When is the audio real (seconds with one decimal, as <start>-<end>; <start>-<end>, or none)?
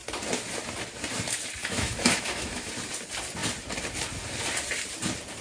0.0-1.6; 2.7-5.4